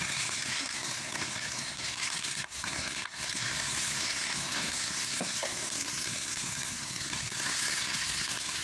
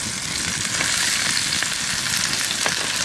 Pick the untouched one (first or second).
second